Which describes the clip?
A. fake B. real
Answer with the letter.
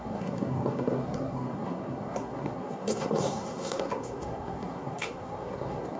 A